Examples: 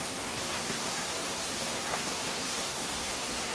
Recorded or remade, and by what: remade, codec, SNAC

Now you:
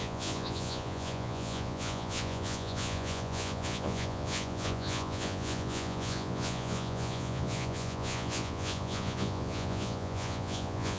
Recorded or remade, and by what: remade, vocoder, Vocos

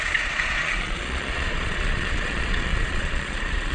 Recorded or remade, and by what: remade, vocoder, Vocos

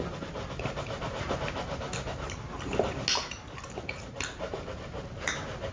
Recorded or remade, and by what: recorded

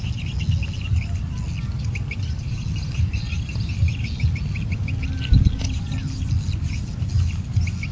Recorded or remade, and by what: recorded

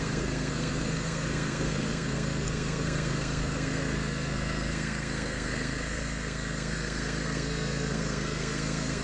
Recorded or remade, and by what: remade, codec, SNAC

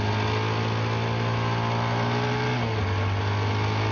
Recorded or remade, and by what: recorded